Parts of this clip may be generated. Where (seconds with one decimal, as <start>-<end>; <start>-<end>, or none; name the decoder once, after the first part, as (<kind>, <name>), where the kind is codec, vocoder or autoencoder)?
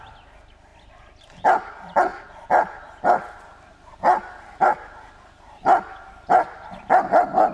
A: none